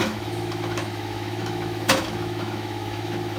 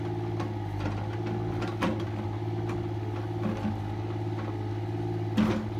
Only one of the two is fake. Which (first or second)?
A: first